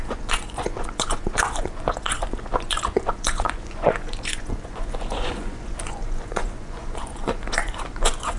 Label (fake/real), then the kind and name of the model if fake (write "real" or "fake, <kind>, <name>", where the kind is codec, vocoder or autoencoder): fake, vocoder, Vocos